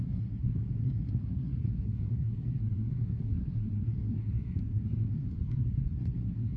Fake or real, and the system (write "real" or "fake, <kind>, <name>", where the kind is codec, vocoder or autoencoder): fake, codec, SNAC